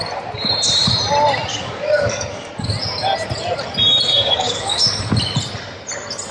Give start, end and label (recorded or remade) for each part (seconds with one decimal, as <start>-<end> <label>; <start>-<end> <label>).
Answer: 0.0-1.5 recorded; 1.5-2.5 remade; 2.5-4.1 recorded; 4.1-5.0 remade; 5.0-6.3 recorded